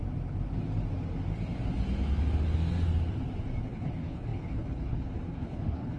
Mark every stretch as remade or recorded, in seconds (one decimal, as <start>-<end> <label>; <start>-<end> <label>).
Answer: 0.0-3.6 recorded; 3.6-6.0 remade